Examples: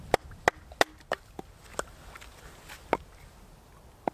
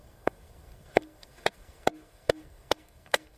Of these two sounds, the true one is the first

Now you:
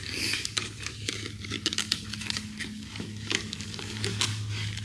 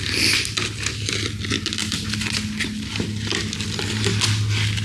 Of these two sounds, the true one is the second